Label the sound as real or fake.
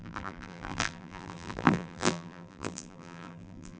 fake